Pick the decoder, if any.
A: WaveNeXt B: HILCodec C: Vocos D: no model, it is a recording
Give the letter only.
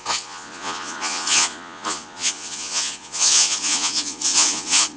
C